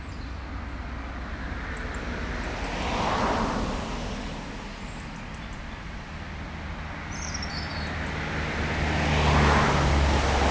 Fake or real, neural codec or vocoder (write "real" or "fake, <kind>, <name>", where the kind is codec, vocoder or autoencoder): real